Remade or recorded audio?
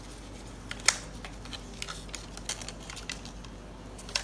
recorded